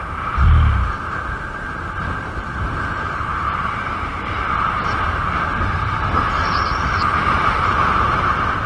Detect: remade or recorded recorded